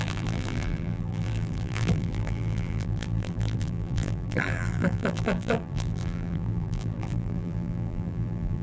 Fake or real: fake